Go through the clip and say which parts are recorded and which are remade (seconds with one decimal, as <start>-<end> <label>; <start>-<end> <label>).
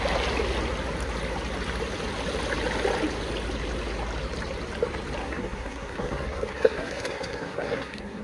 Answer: 0.0-5.2 recorded; 5.2-8.2 remade